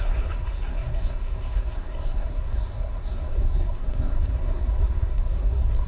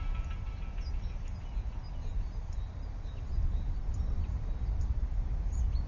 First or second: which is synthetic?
first